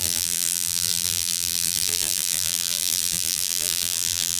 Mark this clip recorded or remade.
remade